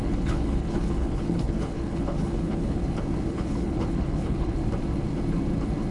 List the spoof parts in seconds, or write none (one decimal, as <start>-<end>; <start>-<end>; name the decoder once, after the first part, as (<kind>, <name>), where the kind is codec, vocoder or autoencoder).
0.0-2.8 (codec, HILCodec); 3.3-4.6